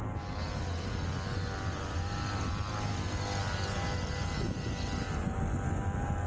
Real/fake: real